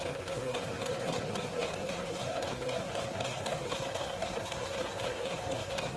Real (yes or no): no